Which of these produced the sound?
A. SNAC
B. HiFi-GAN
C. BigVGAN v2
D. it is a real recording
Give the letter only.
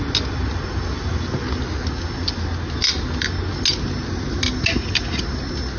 D